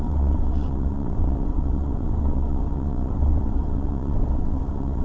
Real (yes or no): no